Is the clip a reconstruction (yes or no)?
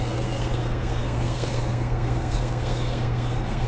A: yes